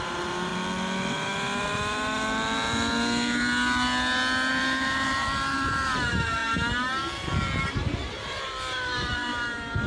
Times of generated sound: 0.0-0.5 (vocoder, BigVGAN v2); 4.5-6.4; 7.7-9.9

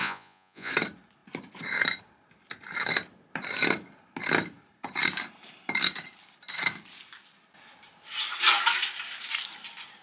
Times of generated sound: 0.0-0.7 (vocoder, Vocos)

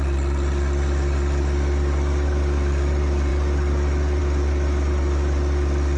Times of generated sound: none

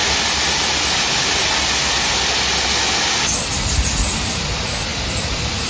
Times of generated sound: 3.4-5.7 (vocoder, BigVGAN v2)

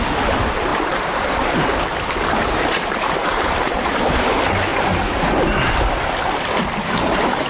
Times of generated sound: 0.7-1.8 (vocoder, BigVGAN v2); 3.2-4.2

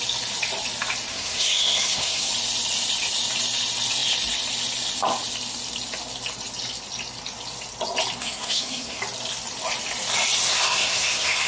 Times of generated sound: 1.1-2.3 (codec, SNAC); 8.2-9.0; 10.5-11.5

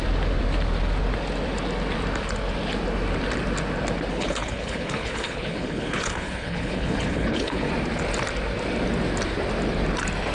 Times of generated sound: 4.1-7.7 (codec, HILCodec)